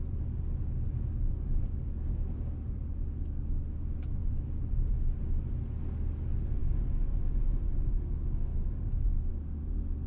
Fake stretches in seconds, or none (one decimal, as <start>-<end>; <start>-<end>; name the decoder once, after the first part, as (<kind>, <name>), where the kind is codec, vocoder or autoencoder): 8.5-9.3 (codec, DAC)

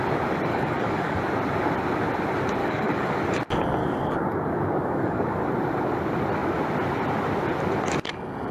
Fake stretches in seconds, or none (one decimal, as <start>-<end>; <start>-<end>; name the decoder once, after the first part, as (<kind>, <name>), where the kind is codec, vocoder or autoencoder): 0.5-1.2 (codec, DAC); 2.6-3.2; 3.8-5.5

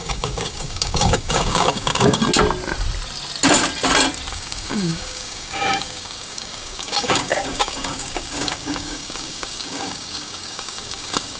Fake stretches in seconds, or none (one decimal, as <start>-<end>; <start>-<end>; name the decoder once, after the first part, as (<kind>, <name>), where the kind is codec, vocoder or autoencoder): 0.0-2.2 (codec, DAC); 4.3-11.4

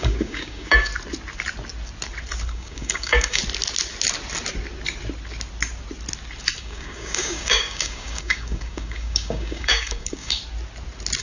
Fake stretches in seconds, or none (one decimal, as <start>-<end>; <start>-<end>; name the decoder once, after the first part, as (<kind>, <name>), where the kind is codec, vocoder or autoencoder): 0.0-0.9 (codec, DAC); 2.5-3.4; 6.6-10.4